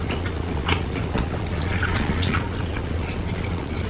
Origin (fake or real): fake